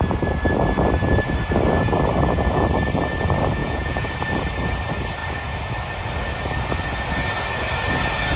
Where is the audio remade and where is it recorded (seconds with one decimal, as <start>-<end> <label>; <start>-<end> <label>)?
0.0-3.6 recorded; 3.6-4.1 remade; 4.1-8.4 recorded